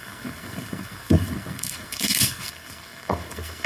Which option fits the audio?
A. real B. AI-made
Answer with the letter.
B